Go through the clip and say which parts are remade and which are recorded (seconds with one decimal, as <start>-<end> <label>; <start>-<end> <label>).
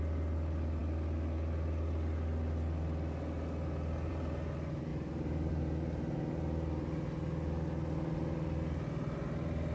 0.0-9.7 recorded